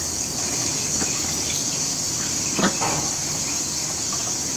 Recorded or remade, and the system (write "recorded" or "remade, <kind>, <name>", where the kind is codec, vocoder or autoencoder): remade, codec, DAC